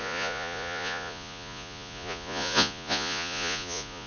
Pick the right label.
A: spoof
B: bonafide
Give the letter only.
A